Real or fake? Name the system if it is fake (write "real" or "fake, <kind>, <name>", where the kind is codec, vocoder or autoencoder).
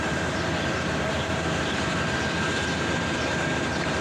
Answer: fake, vocoder, BigVGAN v2